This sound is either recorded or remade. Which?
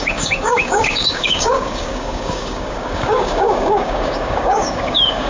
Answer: remade